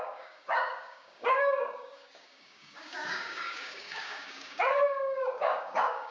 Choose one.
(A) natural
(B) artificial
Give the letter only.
B